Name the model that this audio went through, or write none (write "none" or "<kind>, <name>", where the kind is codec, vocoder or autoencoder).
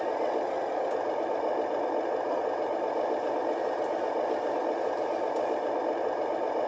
none